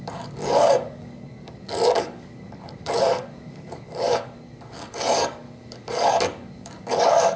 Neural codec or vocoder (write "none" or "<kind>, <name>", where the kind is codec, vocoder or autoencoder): codec, DAC